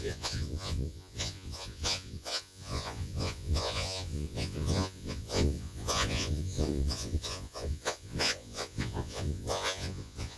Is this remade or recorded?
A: remade